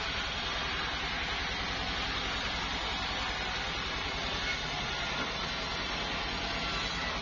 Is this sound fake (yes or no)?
no